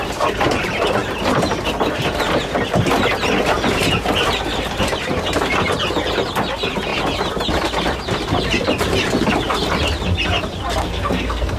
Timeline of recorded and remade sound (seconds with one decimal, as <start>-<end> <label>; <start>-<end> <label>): 0.0-10.8 recorded; 10.8-11.6 remade